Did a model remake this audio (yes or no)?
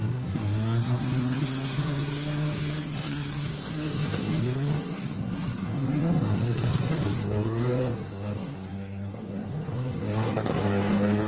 yes